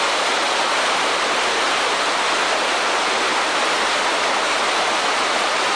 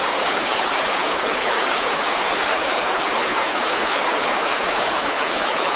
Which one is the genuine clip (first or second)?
first